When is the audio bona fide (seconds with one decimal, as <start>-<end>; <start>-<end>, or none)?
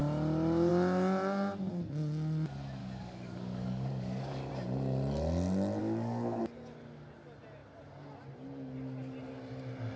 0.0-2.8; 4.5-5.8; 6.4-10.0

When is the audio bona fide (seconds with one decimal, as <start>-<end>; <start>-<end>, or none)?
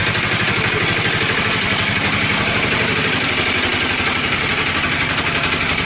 0.0-5.8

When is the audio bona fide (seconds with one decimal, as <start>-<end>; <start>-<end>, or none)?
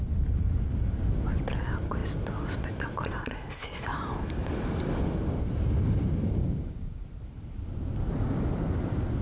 0.0-6.4; 7.0-9.2